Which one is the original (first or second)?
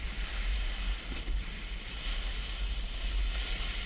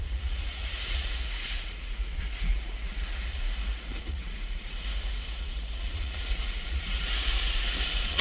first